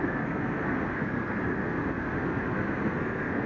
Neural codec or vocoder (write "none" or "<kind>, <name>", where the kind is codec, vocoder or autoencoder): codec, SNAC